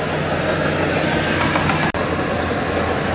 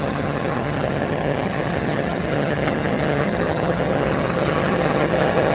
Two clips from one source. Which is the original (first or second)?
first